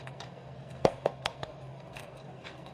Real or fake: fake